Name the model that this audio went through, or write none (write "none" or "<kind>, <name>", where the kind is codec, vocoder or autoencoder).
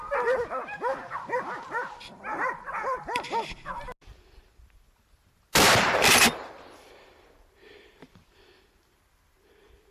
none